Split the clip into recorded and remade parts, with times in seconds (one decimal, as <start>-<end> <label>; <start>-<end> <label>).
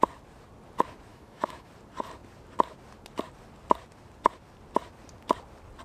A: 0.0-1.1 recorded; 1.1-1.7 remade; 1.7-5.8 recorded